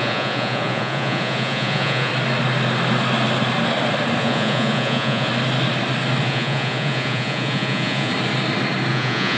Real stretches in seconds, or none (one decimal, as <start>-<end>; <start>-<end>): 2.1-4.2; 5.3-6.2; 8.1-8.9